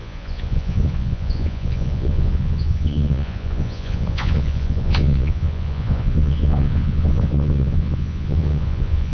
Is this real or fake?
fake